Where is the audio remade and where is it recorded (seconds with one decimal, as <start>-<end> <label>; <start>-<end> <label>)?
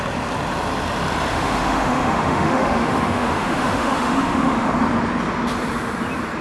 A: 0.0-1.3 recorded; 1.3-4.7 remade; 4.7-6.4 recorded